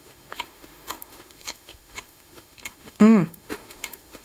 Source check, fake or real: fake